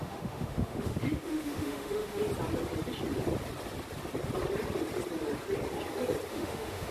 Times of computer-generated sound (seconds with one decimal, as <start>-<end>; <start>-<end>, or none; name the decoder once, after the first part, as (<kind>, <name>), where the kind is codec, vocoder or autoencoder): 0.0-2.2 (autoencoder, DAC-VAE); 6.3-6.9